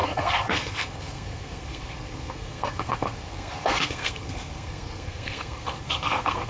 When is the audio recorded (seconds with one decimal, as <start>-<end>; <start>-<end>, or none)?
none